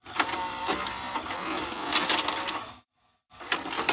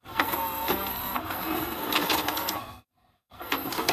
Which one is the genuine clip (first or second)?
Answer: first